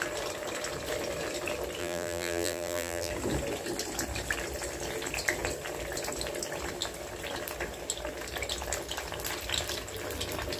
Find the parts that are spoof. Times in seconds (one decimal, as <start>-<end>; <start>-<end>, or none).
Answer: 1.8-3.1